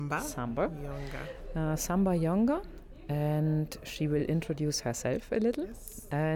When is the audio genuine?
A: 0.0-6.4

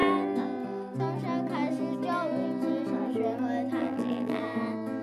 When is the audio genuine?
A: 0.0-3.8; 4.4-5.0